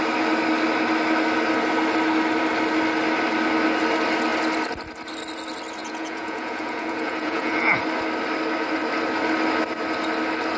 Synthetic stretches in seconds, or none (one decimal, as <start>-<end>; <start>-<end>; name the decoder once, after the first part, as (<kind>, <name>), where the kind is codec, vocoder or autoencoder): 5.8-7.8 (vocoder, Vocos)